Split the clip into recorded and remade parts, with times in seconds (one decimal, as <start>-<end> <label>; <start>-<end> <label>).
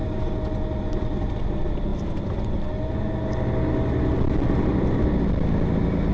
0.0-6.1 recorded